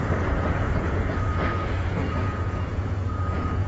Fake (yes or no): yes